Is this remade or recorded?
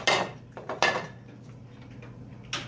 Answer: recorded